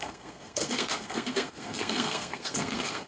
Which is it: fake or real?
fake